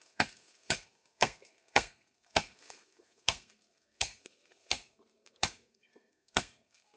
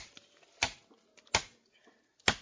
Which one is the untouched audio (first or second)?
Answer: second